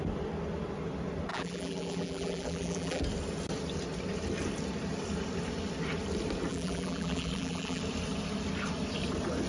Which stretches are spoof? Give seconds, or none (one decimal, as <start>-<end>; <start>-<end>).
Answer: 1.3-3.0; 6.5-7.8